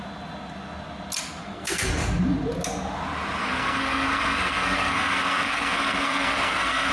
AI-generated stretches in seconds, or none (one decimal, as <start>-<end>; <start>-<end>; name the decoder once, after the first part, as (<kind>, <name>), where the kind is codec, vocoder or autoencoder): 1.4-1.9 (codec, SNAC); 3.4-6.9